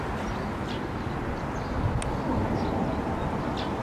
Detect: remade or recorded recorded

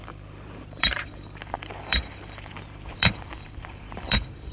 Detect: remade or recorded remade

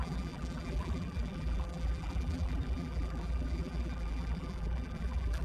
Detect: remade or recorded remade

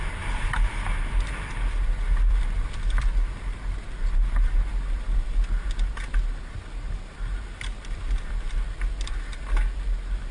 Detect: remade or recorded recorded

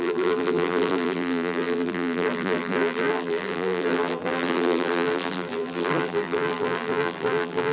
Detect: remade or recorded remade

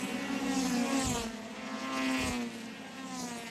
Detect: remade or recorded recorded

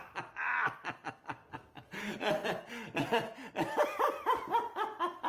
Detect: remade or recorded remade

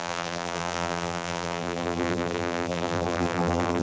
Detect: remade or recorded remade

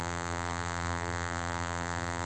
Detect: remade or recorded remade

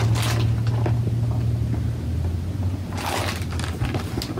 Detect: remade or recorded recorded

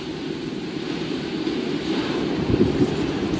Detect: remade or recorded remade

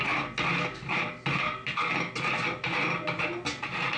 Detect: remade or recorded recorded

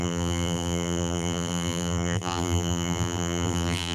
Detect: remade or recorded remade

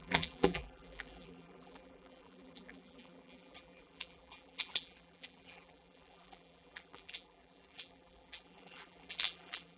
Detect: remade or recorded remade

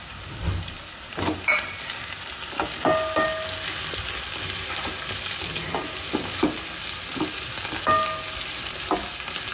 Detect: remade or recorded recorded